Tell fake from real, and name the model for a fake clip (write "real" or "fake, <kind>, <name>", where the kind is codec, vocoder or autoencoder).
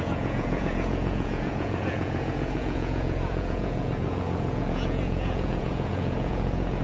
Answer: fake, vocoder, Vocos